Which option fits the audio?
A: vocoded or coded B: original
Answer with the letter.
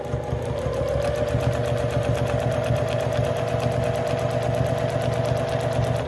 B